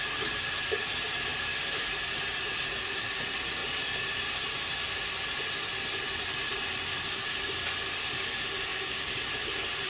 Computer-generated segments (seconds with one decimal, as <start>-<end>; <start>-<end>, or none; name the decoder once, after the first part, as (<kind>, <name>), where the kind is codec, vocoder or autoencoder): 8.7-9.2 (codec, DAC)